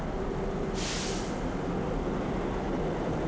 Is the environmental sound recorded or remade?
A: recorded